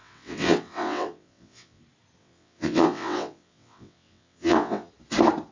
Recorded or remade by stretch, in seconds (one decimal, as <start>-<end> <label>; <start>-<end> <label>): 0.0-1.8 remade; 1.8-2.2 recorded; 2.2-4.9 remade; 4.9-5.5 recorded